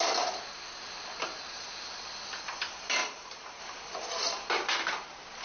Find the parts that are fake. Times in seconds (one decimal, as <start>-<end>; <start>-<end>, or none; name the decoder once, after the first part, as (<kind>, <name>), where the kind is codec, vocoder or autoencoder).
3.0-3.6 (vocoder, BigVGAN v2)